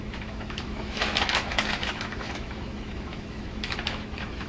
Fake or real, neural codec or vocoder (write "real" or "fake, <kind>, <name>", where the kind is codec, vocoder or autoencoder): fake, autoencoder, DAC-VAE